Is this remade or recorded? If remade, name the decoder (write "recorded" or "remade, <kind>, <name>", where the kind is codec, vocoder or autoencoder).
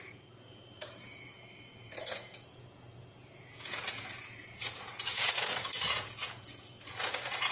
remade, vocoder, Vocos